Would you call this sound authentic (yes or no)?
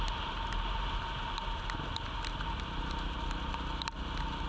yes